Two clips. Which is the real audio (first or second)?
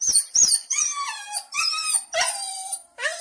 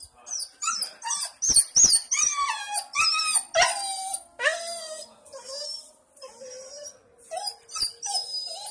second